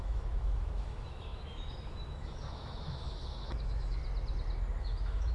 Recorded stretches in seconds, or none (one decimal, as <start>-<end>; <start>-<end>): 4.0-4.8